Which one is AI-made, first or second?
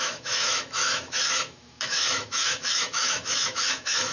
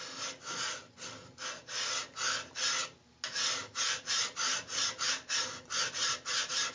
first